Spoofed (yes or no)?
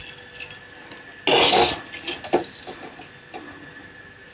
no